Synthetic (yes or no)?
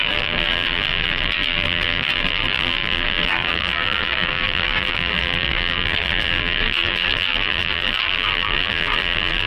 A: yes